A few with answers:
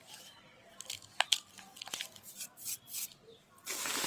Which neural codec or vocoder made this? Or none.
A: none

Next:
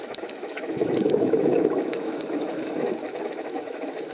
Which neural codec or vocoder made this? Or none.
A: autoencoder, DAC-VAE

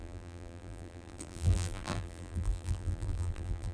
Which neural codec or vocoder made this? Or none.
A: vocoder, BigVGAN v2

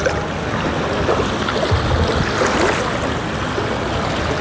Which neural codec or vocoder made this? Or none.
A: none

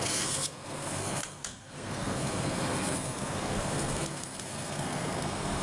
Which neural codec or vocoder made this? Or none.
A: codec, SNAC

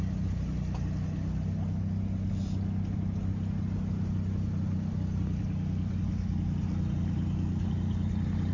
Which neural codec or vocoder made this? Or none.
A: none